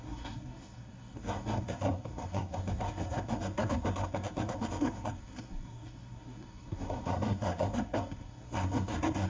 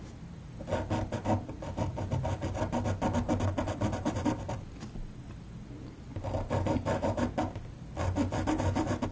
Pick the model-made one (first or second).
first